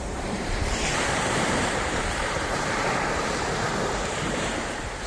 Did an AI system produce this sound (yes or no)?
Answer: yes